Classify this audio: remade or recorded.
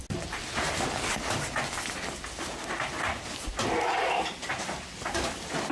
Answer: recorded